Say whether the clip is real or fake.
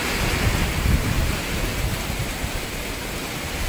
real